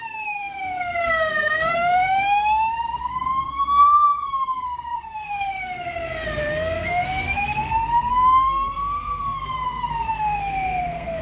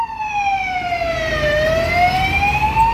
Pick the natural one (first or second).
second